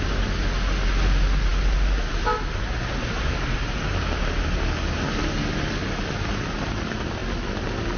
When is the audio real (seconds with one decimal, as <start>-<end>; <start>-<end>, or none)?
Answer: 0.0-8.0